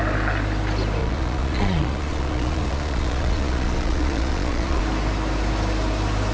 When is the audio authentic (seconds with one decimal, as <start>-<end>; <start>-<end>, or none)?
0.0-1.0; 4.8-6.3